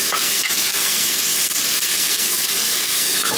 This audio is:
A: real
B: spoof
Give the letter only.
B